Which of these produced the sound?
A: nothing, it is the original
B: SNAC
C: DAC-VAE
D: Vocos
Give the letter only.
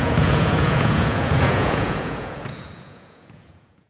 D